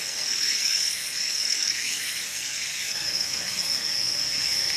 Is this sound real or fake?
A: fake